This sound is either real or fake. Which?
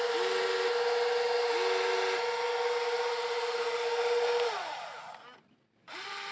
real